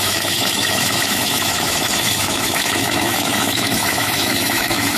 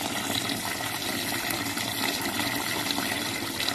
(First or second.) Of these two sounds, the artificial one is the first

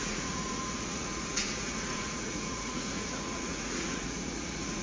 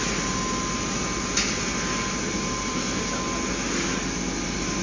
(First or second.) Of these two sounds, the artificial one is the first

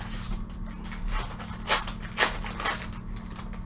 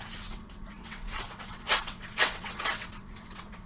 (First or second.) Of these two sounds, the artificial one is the second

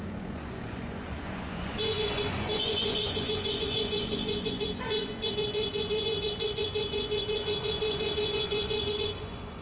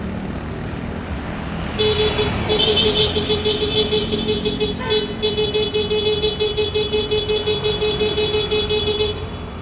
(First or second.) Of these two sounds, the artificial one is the first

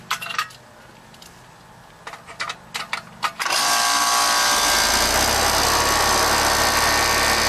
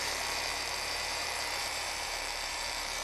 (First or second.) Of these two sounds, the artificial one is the second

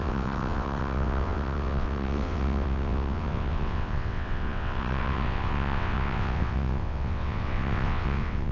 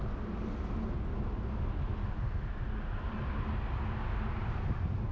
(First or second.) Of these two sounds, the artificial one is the first